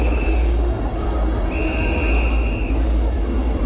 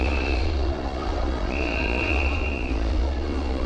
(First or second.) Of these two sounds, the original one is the first